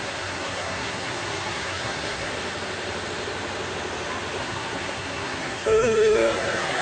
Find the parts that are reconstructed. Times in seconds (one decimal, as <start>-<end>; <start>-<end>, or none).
0.0-2.3; 4.4-6.8